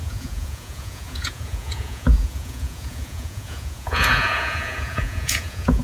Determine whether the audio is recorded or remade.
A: remade